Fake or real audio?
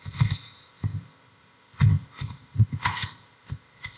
fake